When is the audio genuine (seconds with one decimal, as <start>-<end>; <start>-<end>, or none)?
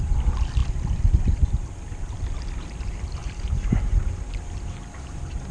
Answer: 0.0-3.2; 4.1-5.5